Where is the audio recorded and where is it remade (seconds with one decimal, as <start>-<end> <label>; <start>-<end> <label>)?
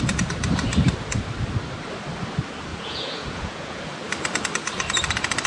0.0-2.7 recorded; 2.7-3.8 remade; 3.8-5.5 recorded